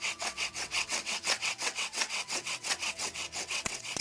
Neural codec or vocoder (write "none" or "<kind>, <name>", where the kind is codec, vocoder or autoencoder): vocoder, WaveNeXt